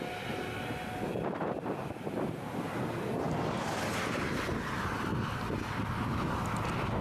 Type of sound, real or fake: real